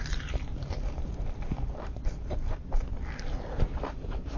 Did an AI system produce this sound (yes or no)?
yes